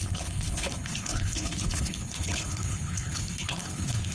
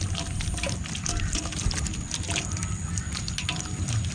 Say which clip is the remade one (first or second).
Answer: first